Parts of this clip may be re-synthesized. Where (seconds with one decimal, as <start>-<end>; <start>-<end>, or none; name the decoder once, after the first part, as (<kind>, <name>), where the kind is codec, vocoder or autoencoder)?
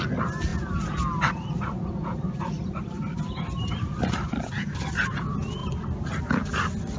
none